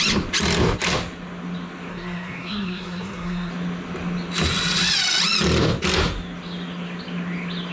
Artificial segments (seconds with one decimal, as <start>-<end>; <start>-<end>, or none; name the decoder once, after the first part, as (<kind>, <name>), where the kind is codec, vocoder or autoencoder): 1.9-3.5 (codec, SNAC)